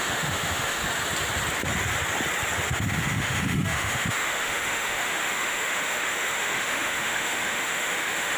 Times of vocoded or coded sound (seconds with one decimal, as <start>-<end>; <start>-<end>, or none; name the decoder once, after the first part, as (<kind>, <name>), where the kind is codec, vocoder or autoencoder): 0.0-0.8 (autoencoder, DAC-VAE); 2.7-8.4